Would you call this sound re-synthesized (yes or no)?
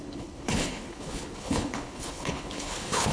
yes